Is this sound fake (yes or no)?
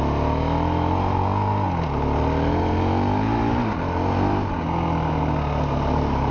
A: no